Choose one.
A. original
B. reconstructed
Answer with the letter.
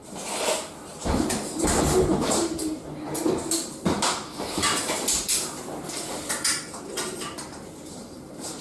B